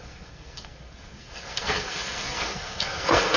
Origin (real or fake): fake